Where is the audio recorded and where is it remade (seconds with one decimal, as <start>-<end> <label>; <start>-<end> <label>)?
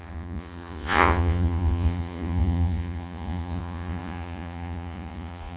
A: 0.0-5.6 remade